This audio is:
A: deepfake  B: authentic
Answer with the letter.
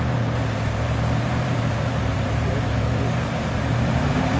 A